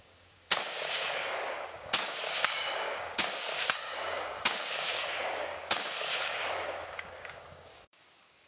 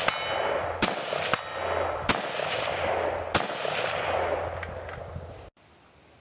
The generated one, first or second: first